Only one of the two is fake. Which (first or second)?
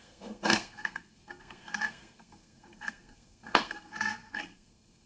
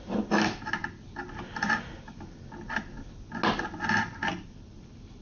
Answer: first